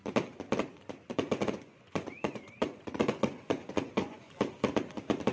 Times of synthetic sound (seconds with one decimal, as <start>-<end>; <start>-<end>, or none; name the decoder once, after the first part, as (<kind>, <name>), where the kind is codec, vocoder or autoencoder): 1.1-4.3 (vocoder, Vocos)